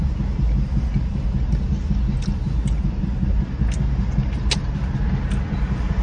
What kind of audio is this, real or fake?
real